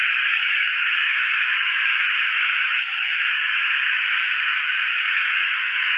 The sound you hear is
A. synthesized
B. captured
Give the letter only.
A